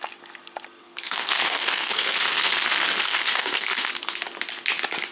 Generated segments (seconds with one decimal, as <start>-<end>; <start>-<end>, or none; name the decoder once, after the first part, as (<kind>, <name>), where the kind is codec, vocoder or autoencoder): 0.8-3.9 (codec, SNAC)